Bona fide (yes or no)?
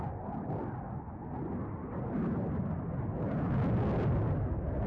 yes